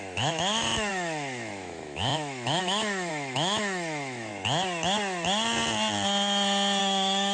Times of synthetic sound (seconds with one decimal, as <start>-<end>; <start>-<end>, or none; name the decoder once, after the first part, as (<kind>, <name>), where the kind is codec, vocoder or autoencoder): 0.0-4.3 (autoencoder, DAC-VAE); 6.8-7.3